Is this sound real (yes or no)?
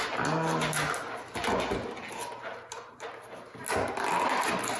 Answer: yes